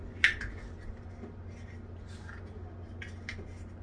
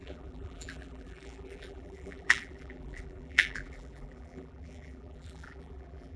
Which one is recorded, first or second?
first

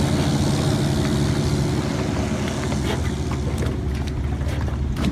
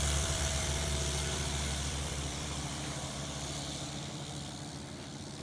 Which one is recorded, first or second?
first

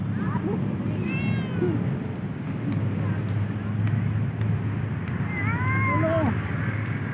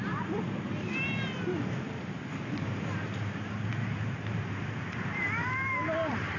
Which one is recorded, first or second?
first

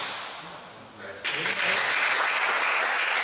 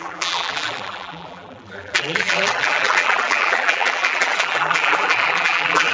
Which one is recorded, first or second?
first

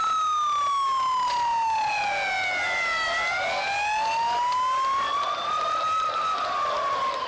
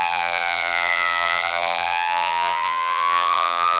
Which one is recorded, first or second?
first